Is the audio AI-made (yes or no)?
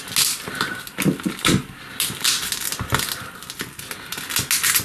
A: no